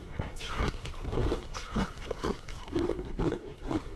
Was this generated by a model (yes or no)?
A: yes